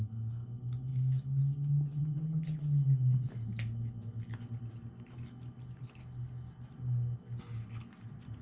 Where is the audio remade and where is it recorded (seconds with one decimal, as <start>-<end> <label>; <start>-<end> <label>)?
0.0-8.4 recorded